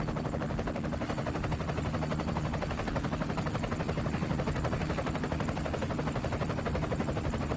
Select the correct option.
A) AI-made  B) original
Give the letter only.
B